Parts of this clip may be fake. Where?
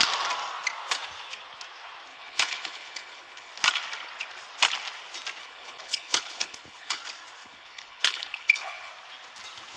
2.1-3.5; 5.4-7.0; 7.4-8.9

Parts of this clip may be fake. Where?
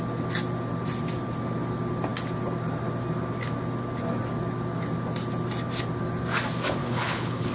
6.8-7.5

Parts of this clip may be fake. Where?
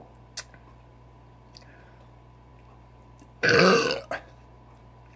none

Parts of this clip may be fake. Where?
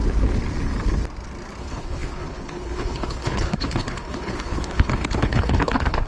1.6-6.1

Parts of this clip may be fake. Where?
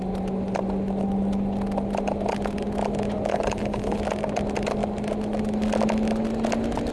3.3-4.0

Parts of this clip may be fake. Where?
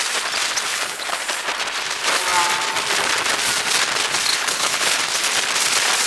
0.7-1.2; 4.3-5.0